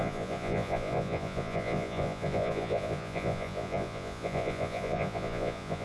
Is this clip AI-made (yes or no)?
yes